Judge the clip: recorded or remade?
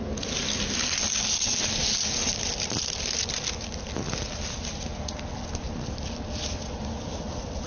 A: recorded